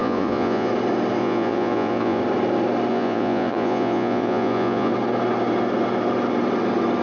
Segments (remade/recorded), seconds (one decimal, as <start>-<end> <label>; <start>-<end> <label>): 0.0-0.7 remade; 0.7-1.2 recorded; 1.2-2.2 remade; 2.2-2.9 recorded; 2.9-4.9 remade; 4.9-7.0 recorded